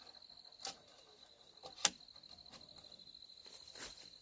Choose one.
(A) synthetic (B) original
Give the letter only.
B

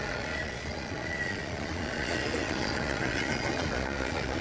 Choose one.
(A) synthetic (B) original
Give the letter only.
A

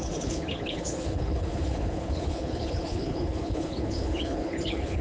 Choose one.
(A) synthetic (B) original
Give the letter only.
A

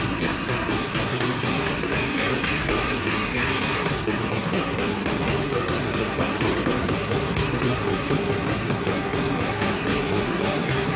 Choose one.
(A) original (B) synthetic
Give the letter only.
B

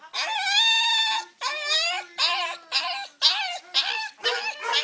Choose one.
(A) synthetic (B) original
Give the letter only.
B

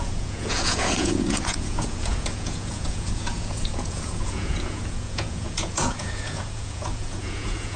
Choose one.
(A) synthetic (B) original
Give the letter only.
A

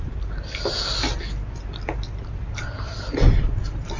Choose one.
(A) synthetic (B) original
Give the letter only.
B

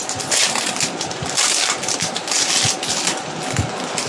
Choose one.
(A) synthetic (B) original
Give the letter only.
B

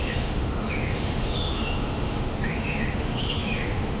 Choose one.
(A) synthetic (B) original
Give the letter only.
A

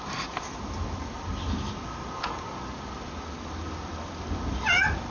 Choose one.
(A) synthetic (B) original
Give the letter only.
B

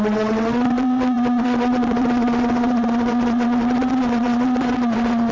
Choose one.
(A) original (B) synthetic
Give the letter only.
B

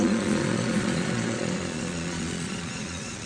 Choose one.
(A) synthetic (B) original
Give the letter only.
A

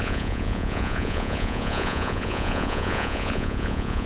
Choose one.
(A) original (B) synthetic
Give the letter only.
B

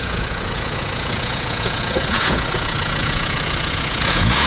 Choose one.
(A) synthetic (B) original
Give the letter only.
A